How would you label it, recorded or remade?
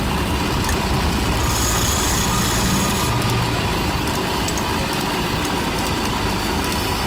recorded